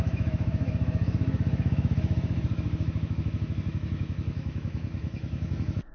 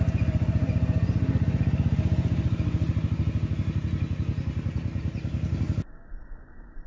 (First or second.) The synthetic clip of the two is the first